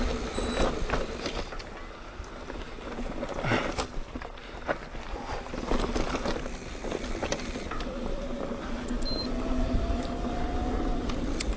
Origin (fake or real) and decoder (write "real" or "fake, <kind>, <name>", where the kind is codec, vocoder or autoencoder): real